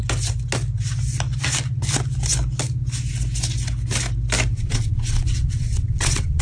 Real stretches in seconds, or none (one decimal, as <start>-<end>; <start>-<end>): 0.0-4.5

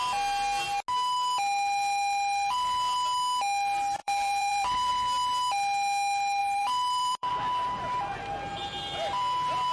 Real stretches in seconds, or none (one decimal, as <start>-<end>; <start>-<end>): 0.0-4.0; 4.9-6.4; 7.3-9.7

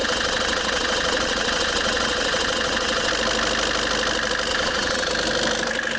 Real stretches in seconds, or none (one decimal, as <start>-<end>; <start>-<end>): 3.1-4.5; 5.1-6.0

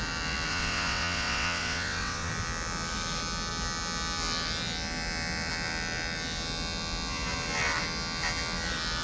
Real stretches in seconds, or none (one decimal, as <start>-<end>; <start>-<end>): 0.0-0.5; 2.3-9.0

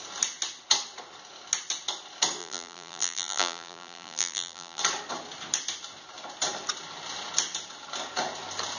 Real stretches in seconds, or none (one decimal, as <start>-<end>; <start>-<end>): 0.0-2.4; 4.8-8.8

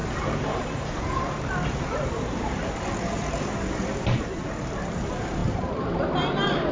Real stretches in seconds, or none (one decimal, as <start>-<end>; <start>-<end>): none

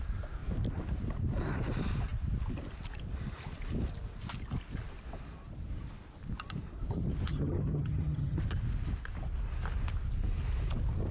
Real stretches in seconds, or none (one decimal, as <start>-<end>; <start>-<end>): 0.0-7.3; 8.4-11.1